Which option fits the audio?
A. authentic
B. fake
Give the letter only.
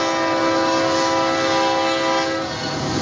A